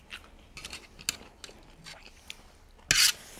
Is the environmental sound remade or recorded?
recorded